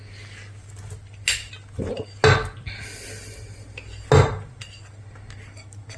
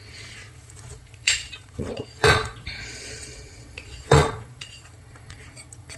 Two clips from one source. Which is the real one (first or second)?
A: first